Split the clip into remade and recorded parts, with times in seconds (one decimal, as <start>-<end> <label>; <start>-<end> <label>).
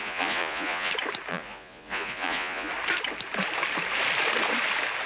0.0-0.9 remade; 0.9-1.3 recorded; 1.3-2.7 remade; 2.7-5.1 recorded